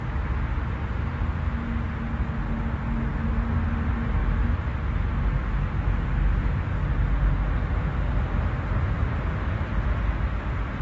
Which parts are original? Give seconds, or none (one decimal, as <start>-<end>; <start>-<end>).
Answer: 0.0-10.8